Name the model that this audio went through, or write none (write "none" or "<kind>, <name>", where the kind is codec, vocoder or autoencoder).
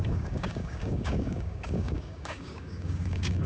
codec, DAC